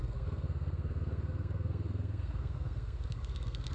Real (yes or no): no